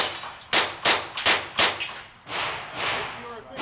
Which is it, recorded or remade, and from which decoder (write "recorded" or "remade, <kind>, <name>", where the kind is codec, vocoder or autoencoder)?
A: recorded